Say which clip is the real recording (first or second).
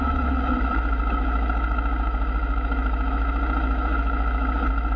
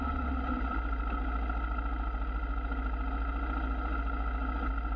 second